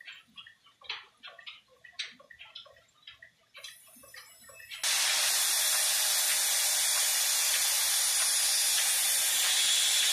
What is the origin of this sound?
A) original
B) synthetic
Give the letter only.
A